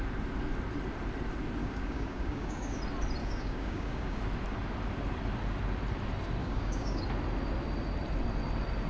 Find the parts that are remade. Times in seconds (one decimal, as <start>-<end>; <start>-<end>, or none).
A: 1.6-2.8; 3.2-4.2; 6.4-7.0